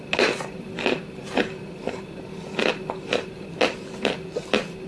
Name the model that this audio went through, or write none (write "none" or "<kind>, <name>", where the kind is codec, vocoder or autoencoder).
none